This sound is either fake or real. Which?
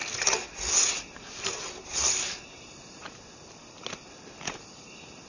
real